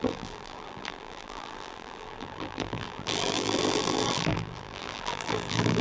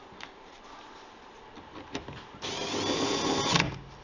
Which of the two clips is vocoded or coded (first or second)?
first